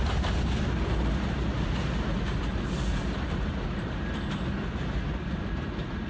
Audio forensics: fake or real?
real